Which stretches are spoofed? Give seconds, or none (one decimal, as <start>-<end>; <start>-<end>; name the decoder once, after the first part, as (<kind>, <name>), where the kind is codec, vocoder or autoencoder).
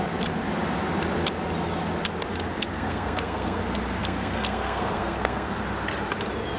2.7-3.6 (codec, SNAC); 4.0-5.5